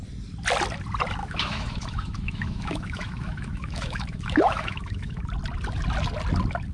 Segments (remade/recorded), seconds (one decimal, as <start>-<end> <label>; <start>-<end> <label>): 0.0-1.2 recorded; 1.2-5.2 remade; 5.2-6.7 recorded